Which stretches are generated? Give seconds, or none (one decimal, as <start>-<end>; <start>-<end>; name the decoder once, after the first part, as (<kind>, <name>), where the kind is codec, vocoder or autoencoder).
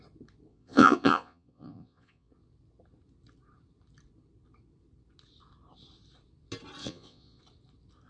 0.5-2.3 (vocoder, Vocos); 6.8-7.4